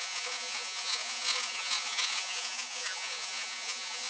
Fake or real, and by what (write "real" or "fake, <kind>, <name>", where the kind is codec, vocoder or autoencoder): fake, vocoder, Vocos